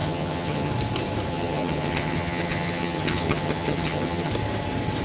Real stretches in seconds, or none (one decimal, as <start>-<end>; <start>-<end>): 0.7-1.3; 4.3-5.0